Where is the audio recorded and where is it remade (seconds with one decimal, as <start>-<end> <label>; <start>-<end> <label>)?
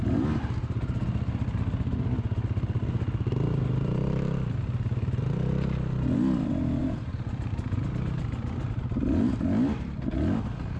0.0-6.8 recorded; 6.8-8.7 remade; 8.7-10.8 recorded